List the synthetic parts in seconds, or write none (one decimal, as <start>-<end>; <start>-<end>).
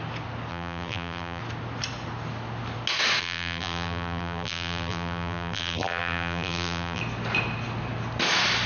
0.5-1.4; 3.2-7.0